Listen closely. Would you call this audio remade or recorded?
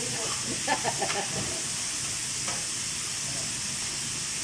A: recorded